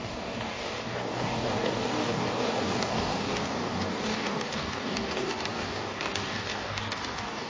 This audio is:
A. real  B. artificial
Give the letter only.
B